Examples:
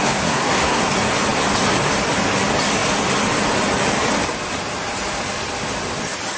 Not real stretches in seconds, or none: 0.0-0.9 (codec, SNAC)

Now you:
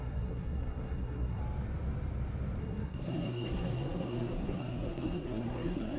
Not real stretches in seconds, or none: 0.0-1.4 (codec, SNAC); 2.6-6.0

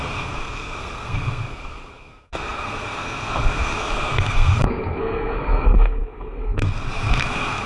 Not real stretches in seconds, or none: 0.0-7.7 (codec, SNAC)

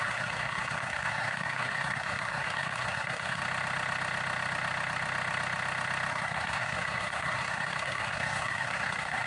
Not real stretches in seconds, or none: 0.0-3.4 (codec, SNAC); 6.1-9.3

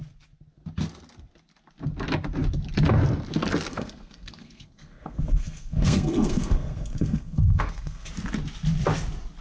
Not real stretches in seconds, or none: 3.7-8.1 (codec, SNAC)

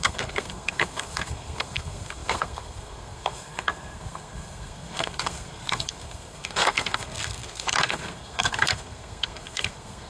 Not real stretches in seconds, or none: 0.0-10.1 (codec, SNAC)